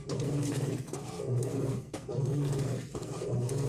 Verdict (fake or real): fake